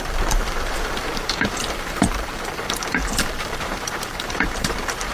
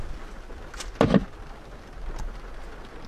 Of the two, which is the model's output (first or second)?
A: first